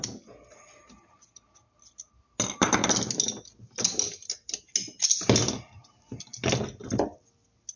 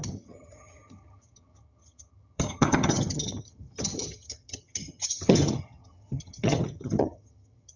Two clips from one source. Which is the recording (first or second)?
first